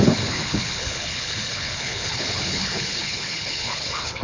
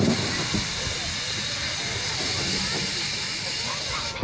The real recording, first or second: second